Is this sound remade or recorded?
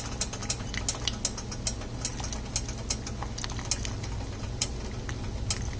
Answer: recorded